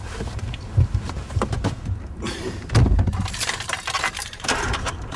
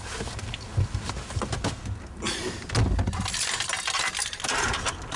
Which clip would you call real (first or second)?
second